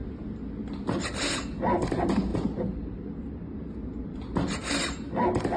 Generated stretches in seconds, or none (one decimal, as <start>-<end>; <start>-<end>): none